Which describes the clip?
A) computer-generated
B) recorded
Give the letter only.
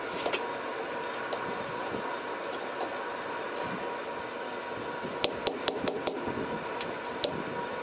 B